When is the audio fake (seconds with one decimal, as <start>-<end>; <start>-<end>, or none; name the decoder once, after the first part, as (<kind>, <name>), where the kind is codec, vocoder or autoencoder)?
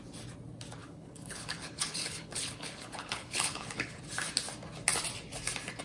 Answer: 0.8-4.0 (codec, HILCodec)